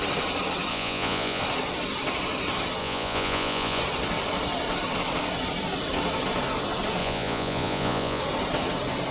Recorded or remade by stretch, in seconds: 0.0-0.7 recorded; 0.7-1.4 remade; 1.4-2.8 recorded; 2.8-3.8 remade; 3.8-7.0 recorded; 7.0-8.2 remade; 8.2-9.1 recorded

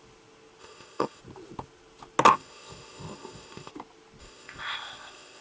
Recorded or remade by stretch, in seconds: 0.0-0.6 recorded; 0.6-1.2 remade; 1.2-2.3 recorded; 2.3-3.7 remade; 3.7-4.2 recorded; 4.2-5.4 remade

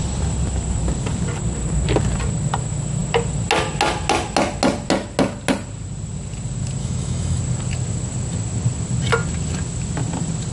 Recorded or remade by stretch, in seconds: 0.0-6.8 recorded; 6.8-7.4 remade; 7.4-10.5 recorded